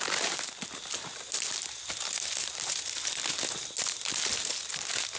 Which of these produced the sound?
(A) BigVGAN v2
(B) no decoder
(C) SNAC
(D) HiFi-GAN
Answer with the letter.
B